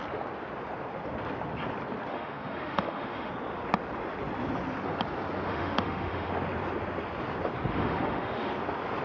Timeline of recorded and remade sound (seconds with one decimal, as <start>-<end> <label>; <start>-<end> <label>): 0.0-2.1 recorded; 2.1-3.3 remade; 3.3-5.5 recorded; 5.5-6.3 remade; 6.3-7.7 recorded; 7.7-8.5 remade; 8.5-9.0 recorded